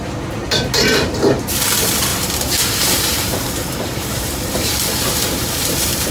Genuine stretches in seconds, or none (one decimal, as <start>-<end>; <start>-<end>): 0.0-2.1